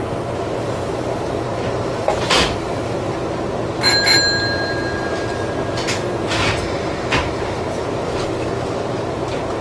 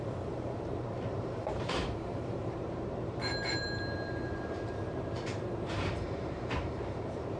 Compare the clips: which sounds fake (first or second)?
second